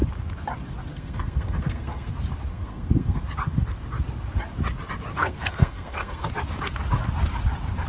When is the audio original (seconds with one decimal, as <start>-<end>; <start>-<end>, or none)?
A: 0.0-0.9; 2.1-2.5; 3.2-5.1; 6.3-7.9